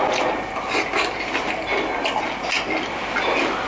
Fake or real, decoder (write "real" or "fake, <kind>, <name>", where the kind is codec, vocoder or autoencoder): real